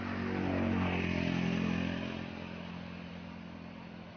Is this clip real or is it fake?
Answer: real